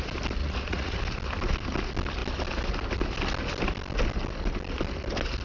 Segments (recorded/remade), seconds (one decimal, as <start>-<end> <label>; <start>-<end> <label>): 0.0-0.4 recorded; 0.4-1.0 remade; 1.0-5.4 recorded